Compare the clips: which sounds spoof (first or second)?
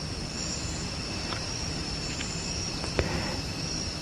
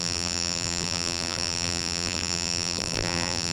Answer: second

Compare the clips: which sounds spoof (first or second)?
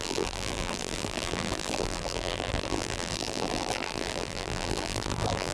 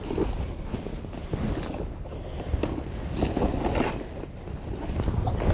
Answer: first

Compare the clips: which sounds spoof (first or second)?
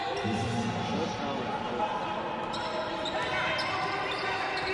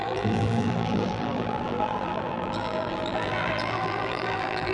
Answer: second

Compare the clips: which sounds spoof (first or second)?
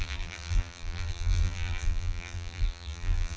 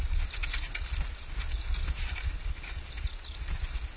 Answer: first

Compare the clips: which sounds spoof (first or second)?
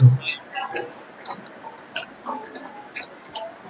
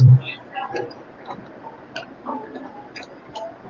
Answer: second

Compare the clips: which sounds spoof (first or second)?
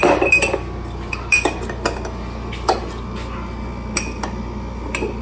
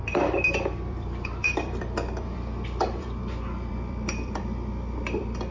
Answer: second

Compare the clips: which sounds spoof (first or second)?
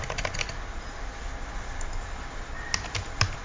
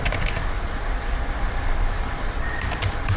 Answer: second